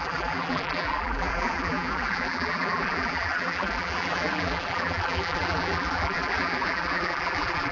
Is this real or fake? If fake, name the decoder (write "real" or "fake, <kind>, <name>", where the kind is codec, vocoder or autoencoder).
fake, vocoder, BigVGAN v2